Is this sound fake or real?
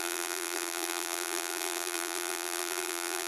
fake